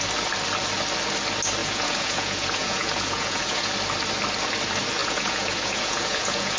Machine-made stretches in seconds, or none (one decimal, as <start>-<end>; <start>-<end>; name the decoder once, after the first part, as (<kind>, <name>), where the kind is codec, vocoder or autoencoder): 1.6-3.7 (vocoder, Vocos); 5.0-6.6